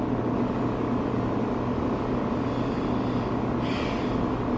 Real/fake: real